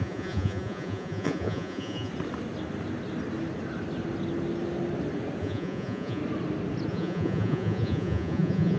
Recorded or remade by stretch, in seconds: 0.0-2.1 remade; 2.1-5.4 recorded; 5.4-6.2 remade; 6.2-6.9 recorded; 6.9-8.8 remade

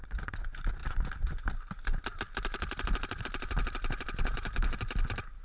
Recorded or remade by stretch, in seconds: 0.0-5.4 recorded

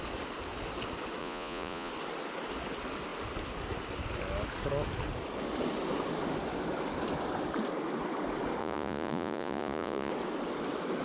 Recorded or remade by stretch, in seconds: 0.0-1.2 recorded; 1.2-1.9 remade; 1.9-8.6 recorded; 8.6-10.1 remade; 10.1-11.0 recorded

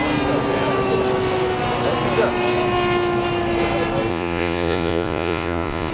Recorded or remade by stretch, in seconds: 0.0-4.1 recorded; 4.1-5.9 remade

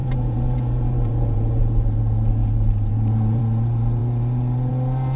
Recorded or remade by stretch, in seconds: 0.0-2.0 remade; 2.0-2.4 recorded; 2.4-3.4 remade; 3.4-5.2 recorded